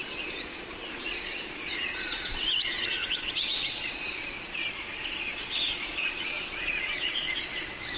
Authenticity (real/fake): fake